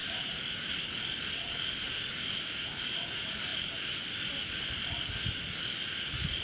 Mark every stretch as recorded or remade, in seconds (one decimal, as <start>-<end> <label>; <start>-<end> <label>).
0.0-6.4 recorded